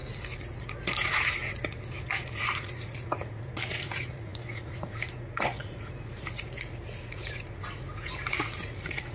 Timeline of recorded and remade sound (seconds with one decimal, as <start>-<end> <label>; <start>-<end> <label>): 0.0-9.1 remade